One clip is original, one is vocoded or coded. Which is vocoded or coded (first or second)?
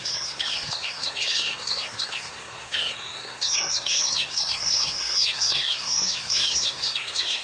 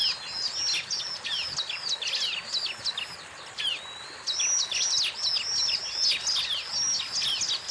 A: first